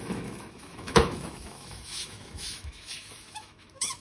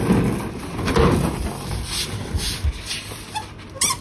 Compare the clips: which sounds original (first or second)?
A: second